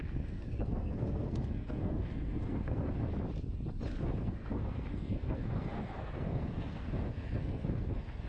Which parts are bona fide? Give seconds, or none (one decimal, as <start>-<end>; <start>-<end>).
3.1-4.0